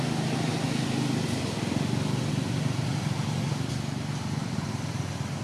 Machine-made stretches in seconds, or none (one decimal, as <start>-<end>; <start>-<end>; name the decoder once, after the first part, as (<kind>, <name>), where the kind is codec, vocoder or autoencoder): none